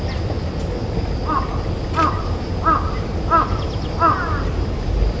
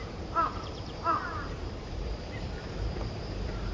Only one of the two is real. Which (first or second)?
first